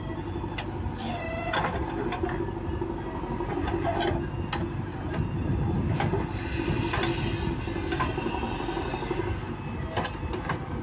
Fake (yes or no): no